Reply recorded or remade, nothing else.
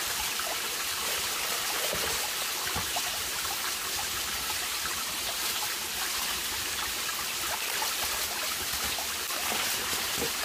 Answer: remade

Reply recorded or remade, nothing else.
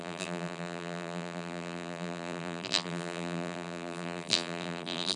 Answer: remade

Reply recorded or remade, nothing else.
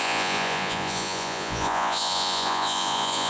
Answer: remade